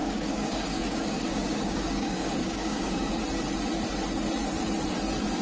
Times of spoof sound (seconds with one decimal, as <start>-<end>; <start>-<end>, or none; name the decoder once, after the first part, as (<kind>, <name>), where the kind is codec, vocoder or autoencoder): 0.0-3.2 (codec, DAC)